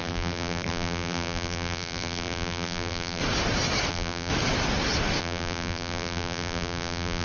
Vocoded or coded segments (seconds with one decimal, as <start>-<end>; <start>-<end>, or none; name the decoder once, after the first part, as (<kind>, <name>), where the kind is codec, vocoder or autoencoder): 0.0-3.2 (vocoder, BigVGAN v2); 3.9-4.3; 5.2-7.2